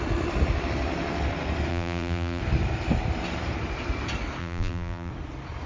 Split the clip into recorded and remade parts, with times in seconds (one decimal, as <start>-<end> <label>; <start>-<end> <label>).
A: 0.0-1.7 recorded; 1.7-2.4 remade; 2.4-4.4 recorded; 4.4-5.1 remade; 5.1-5.7 recorded

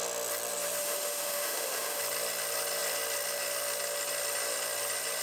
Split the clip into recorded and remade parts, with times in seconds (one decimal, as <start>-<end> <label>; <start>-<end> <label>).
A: 0.0-0.8 recorded; 0.8-2.0 remade; 2.0-5.2 recorded